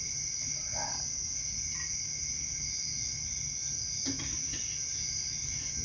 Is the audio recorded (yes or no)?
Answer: yes